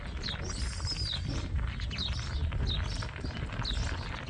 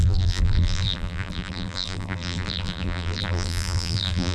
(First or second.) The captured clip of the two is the first